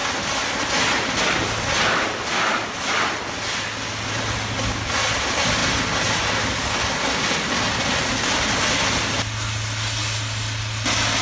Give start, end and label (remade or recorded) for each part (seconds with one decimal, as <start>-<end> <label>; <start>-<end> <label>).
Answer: 0.0-11.2 recorded